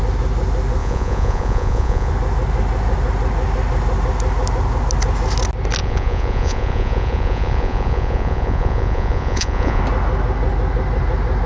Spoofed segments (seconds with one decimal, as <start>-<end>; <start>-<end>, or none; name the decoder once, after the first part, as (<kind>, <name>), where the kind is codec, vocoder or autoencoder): 0.8-2.1 (vocoder, Vocos); 5.8-9.8